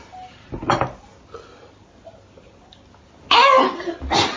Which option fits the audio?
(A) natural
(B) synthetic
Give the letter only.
A